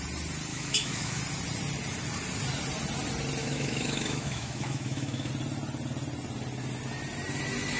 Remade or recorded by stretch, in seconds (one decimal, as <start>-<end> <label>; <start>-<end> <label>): 0.0-0.5 recorded; 0.5-1.2 remade; 1.2-3.4 recorded; 3.4-5.3 remade; 5.3-7.8 recorded